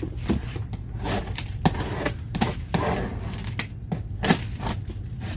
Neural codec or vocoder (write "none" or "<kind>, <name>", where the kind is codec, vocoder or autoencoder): none